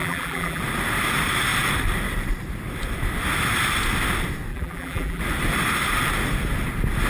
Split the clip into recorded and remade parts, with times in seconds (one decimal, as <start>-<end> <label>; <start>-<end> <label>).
0.0-0.6 remade; 0.6-4.5 recorded; 4.5-5.2 remade; 5.2-7.1 recorded